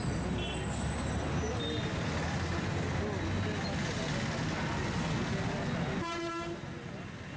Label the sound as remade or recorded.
recorded